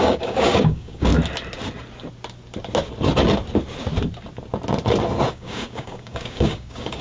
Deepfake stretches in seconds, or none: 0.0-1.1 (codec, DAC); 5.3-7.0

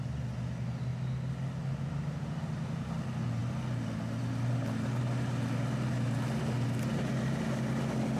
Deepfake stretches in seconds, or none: none

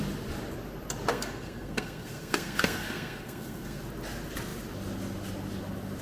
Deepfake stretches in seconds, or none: 1.1-3.8 (codec, SNAC)

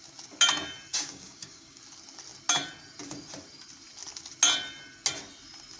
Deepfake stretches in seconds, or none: 0.9-1.8 (codec, DAC)

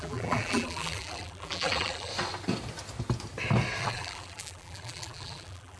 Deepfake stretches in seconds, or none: 0.0-2.1 (vocoder, BigVGAN v2); 3.8-5.8